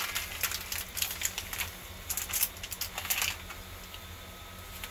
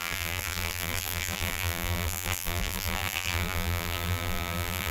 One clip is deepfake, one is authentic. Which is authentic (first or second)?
first